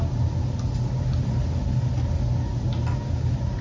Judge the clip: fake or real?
real